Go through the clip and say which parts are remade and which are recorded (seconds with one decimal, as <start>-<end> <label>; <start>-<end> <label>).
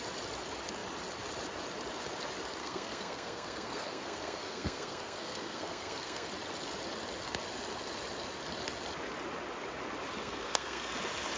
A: 0.0-2.6 recorded; 2.6-6.3 remade; 6.3-10.2 recorded; 10.2-10.9 remade; 10.9-11.4 recorded